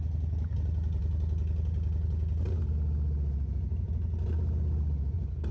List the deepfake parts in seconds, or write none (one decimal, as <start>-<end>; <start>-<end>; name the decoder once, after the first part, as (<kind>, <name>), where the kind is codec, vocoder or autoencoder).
none